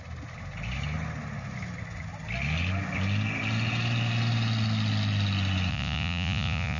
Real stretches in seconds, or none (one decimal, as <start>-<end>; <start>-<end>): 0.0-5.7